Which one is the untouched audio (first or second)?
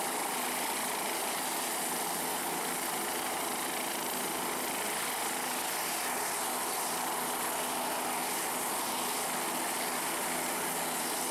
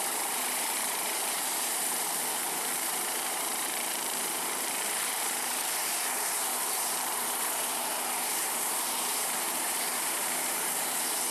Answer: first